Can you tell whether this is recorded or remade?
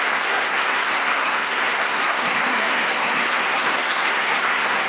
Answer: remade